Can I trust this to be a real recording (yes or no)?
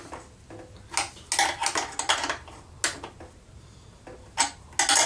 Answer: yes